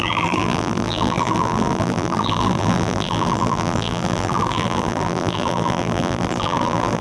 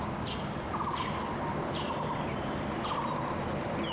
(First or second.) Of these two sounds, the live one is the second